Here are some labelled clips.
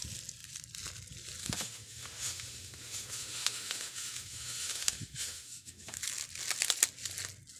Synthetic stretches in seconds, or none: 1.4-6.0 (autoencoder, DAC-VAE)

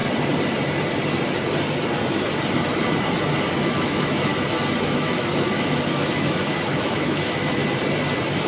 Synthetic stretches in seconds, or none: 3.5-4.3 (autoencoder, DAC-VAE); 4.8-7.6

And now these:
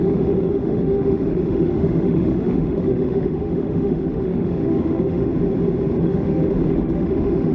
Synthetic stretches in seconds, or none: 0.0-5.3 (autoencoder, DAC-VAE); 6.0-7.5

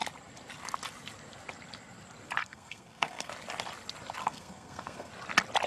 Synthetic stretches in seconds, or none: 2.4-3.3 (codec, SNAC); 4.2-5.1

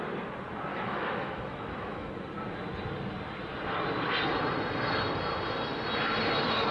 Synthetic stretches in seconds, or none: 0.7-2.1 (autoencoder, DAC-VAE)